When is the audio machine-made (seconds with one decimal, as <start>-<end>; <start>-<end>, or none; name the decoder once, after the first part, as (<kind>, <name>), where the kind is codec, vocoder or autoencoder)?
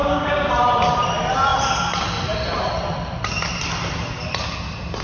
0.0-0.5 (codec, DAC)